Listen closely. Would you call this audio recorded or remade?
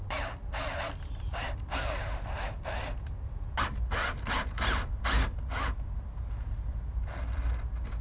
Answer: recorded